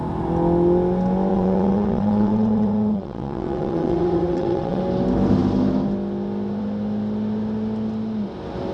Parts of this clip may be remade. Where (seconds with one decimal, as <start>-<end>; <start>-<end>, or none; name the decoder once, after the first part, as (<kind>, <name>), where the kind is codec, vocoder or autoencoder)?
1.3-4.8 (vocoder, WaveNeXt)